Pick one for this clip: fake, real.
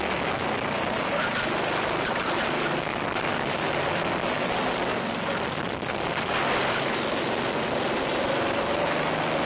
real